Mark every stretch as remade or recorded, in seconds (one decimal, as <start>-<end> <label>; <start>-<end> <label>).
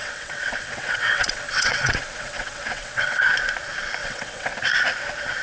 0.0-3.2 remade; 3.2-4.0 recorded; 4.0-4.5 remade; 4.5-5.4 recorded